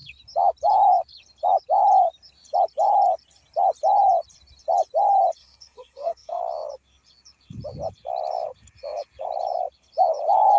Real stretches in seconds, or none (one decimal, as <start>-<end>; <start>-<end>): 0.0-5.4; 6.4-10.6